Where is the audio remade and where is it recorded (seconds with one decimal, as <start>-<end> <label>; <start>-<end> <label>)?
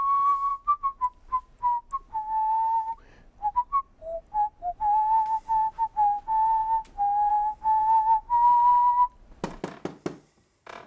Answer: 0.0-10.9 recorded